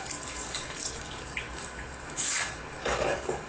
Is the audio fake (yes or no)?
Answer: yes